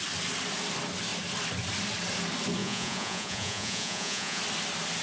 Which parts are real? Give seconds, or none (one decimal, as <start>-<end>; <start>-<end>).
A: 0.0-2.6; 4.4-5.0